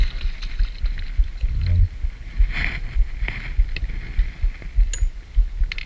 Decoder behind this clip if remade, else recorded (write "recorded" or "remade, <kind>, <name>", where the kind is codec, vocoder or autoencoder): recorded